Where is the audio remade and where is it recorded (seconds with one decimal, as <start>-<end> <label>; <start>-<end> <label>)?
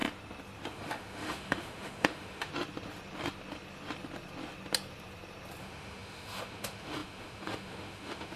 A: 0.0-0.7 recorded; 0.7-2.5 remade; 2.5-5.6 recorded; 5.6-8.4 remade